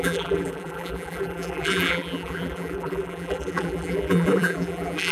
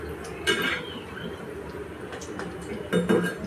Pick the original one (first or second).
second